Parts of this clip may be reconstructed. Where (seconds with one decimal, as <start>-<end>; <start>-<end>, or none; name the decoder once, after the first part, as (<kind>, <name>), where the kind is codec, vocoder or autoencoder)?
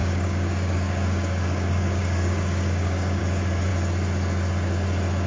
0.0-3.2 (codec, DAC)